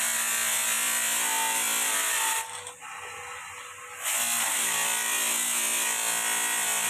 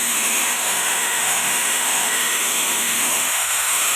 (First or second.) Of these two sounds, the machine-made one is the second